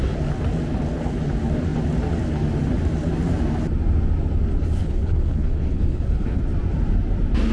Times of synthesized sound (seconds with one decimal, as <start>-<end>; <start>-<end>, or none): 4.8-6.4